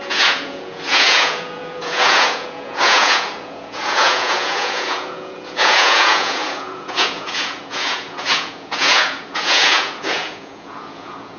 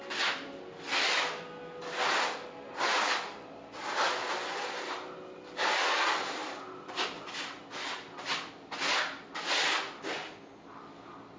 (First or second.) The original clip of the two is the second